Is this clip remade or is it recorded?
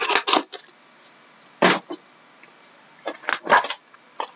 recorded